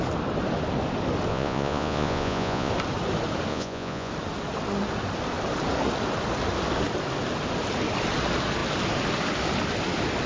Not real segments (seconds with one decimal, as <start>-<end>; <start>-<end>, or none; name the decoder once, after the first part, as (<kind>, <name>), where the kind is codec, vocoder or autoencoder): 1.3-2.7 (vocoder, Vocos); 3.5-4.1